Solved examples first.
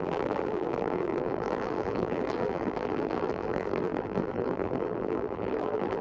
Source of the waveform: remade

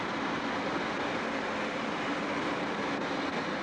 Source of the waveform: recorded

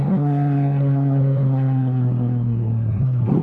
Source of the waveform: remade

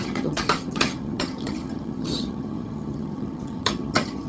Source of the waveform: remade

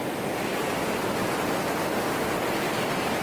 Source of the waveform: recorded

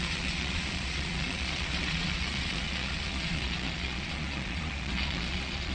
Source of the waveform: remade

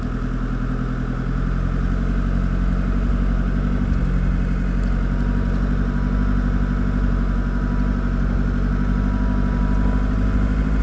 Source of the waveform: recorded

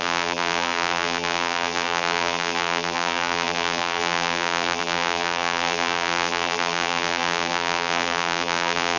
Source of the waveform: remade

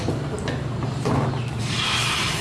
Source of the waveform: remade